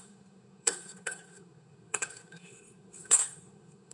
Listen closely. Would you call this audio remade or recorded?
remade